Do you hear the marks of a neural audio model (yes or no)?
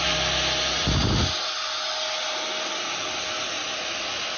no